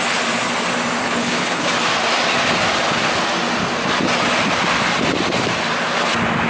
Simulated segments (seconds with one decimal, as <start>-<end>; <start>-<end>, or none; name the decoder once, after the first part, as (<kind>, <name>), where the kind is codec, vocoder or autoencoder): 1.0-1.7 (codec, HILCodec)

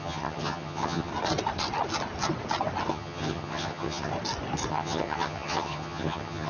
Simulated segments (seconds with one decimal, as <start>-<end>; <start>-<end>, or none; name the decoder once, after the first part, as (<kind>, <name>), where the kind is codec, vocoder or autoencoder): 0.0-1.1 (vocoder, HiFi-GAN); 2.9-4.1; 4.7-6.5

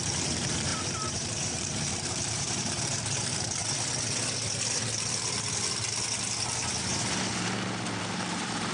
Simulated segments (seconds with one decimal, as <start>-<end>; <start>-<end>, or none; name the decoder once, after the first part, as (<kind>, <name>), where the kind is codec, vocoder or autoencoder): 0.0-3.6 (vocoder, BigVGAN v2); 8.0-8.7

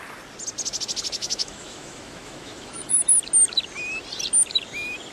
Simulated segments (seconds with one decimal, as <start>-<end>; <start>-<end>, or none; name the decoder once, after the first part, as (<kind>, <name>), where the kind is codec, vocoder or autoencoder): 1.2-3.1 (autoencoder, DAC-VAE)

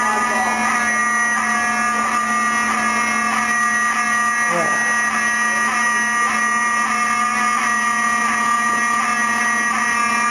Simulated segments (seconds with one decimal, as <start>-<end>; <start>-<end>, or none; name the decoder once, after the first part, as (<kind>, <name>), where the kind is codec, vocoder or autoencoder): none

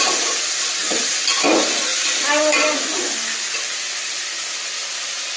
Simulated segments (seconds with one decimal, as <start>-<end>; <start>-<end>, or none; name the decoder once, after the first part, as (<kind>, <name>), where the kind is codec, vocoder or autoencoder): 0.0-0.8 (vocoder, BigVGAN v2); 1.5-1.9; 4.0-5.4

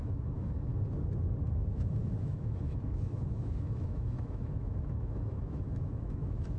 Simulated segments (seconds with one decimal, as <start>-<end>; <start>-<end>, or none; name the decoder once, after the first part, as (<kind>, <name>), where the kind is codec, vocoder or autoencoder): 0.0-0.7 (autoencoder, DAC-VAE); 1.7-6.6

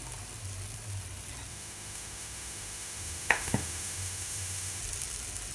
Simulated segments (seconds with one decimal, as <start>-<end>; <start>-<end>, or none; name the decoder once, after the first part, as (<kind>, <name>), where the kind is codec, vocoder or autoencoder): 1.5-4.8 (autoencoder, DAC-VAE)